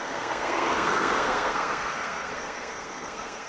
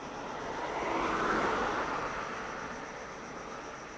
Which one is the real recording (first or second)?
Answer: second